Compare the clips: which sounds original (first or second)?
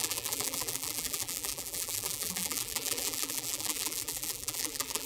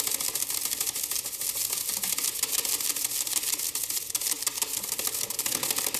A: second